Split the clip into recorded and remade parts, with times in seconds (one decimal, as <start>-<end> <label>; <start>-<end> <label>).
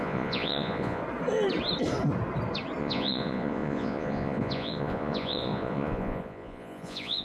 0.0-1.0 remade; 1.0-2.8 recorded; 2.8-7.2 remade